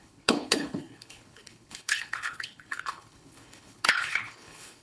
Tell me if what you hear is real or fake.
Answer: fake